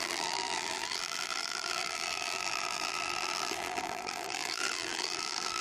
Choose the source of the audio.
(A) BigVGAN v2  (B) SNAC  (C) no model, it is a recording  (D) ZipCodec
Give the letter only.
A